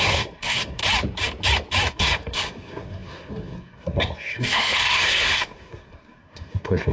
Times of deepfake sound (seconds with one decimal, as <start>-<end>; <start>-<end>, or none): 0.0-0.8; 1.9-6.9